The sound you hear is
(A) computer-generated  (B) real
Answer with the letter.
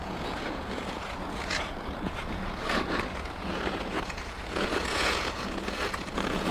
A